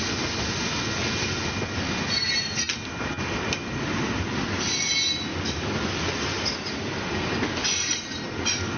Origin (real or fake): real